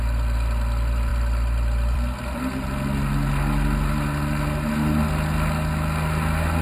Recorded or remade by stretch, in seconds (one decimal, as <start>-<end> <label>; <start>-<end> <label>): 0.0-1.1 recorded; 1.1-2.4 remade; 2.4-6.6 recorded